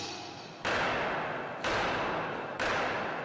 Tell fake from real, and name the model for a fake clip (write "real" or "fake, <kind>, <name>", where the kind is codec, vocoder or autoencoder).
real